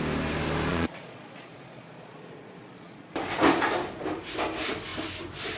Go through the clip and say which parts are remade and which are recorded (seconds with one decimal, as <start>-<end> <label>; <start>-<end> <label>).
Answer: 0.0-0.7 recorded; 0.7-3.1 remade; 3.1-5.6 recorded